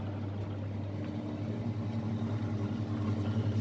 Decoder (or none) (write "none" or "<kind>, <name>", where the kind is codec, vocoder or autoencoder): none